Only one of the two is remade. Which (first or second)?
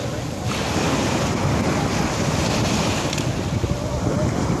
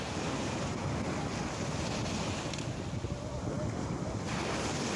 first